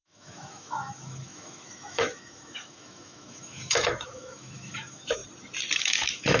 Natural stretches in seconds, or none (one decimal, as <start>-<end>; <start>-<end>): 5.2-5.8